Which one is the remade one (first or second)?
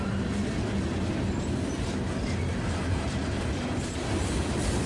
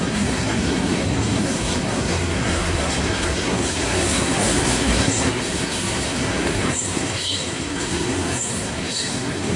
second